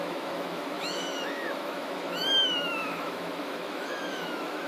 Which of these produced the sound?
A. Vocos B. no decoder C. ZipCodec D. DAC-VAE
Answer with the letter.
D